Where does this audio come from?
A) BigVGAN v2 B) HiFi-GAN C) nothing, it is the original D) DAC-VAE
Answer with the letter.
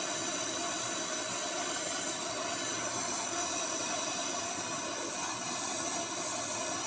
C